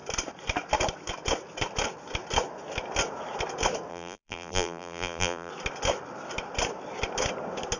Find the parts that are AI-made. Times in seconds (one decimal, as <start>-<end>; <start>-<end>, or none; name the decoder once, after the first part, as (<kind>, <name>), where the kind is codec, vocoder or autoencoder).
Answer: 3.9-5.5 (vocoder, BigVGAN v2)